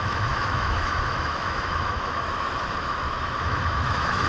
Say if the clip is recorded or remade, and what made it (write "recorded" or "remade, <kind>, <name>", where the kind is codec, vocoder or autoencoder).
remade, autoencoder, DAC-VAE